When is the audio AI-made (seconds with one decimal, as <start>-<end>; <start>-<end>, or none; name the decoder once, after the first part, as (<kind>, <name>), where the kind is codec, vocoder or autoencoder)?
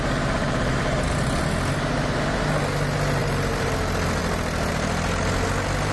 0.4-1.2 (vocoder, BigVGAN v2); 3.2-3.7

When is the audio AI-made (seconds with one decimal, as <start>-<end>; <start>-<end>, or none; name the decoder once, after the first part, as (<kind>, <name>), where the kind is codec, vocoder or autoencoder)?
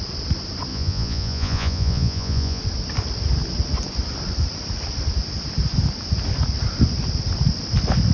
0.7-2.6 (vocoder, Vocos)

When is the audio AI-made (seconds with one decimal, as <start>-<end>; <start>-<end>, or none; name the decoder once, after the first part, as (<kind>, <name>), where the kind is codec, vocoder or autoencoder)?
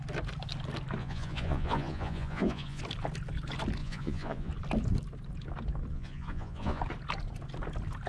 1.0-2.8 (vocoder, Vocos); 3.8-4.5; 5.9-6.8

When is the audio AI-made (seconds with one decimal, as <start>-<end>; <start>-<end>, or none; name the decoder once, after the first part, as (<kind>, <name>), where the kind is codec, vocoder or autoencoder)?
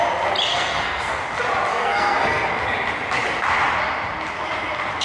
0.5-1.2 (codec, SNAC); 1.7-2.5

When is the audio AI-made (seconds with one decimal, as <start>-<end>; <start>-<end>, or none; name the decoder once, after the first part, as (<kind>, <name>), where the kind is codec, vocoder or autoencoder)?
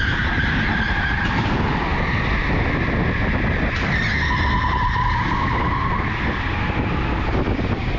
none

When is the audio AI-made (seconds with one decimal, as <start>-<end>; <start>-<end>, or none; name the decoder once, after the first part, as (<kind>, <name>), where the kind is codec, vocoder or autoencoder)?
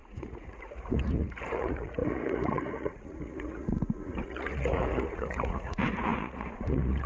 0.0-7.1 (vocoder, Vocos)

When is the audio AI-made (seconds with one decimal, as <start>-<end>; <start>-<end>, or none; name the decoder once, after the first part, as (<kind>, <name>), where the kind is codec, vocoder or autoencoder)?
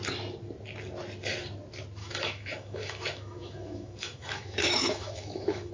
2.0-5.7 (autoencoder, DAC-VAE)